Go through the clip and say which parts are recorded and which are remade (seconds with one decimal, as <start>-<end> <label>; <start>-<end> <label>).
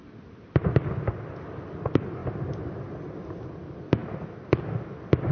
0.0-5.3 recorded